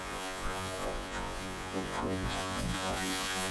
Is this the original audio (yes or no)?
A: no